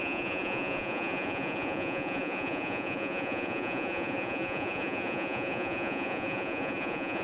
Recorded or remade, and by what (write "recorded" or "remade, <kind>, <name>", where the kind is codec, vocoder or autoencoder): remade, vocoder, Vocos